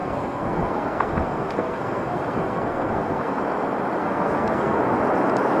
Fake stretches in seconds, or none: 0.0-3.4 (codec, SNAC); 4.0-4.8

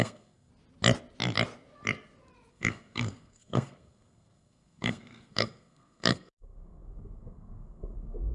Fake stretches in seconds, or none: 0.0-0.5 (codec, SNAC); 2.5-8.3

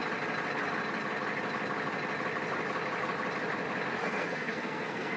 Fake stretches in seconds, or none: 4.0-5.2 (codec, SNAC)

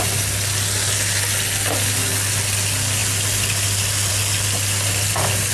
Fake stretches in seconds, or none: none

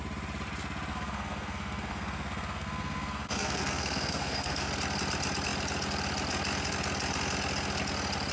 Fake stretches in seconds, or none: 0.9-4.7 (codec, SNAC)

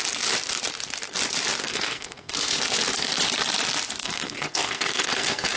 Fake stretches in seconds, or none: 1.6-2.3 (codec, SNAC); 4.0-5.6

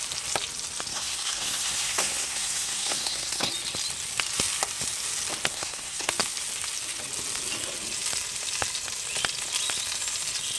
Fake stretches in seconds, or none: 0.9-3.5 (codec, SNAC); 5.5-6.1

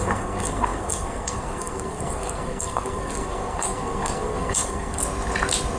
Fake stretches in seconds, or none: 0.0-5.0 (codec, SNAC)